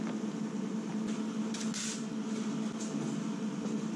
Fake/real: real